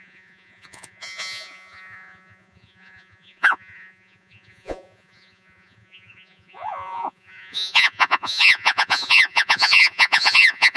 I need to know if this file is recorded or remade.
remade